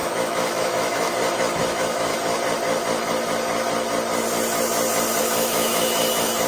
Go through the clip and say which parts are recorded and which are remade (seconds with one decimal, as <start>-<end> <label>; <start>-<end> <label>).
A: 0.0-1.1 remade; 1.1-1.6 recorded; 1.6-2.1 remade; 2.1-5.2 recorded; 5.2-6.5 remade